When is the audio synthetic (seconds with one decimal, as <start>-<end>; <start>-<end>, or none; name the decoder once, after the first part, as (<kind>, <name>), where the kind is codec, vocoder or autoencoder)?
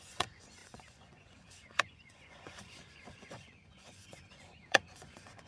0.0-5.5 (vocoder, Vocos)